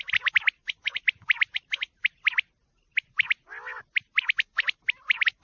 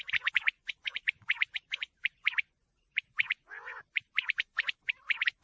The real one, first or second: first